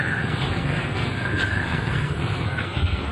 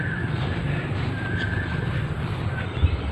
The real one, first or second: second